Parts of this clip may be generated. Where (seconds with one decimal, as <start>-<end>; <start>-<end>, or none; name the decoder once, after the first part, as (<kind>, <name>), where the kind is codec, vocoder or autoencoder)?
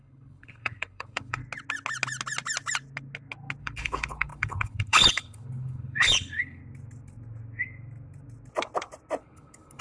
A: 0.0-1.4 (codec, HILCodec); 3.6-6.6; 9.2-9.8